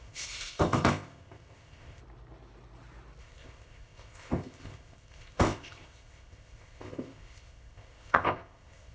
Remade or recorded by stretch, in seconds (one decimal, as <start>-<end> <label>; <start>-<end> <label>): 0.0-2.0 remade; 2.0-3.2 recorded; 3.2-8.9 remade